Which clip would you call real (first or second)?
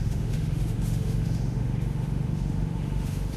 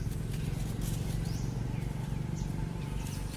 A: second